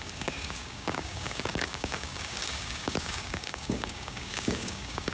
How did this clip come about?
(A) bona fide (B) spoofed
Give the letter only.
B